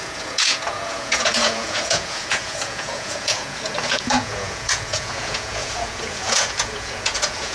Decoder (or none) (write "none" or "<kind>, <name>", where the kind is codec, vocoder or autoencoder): vocoder, Vocos